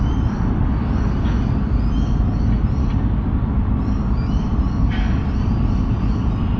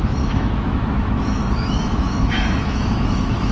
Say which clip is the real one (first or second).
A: first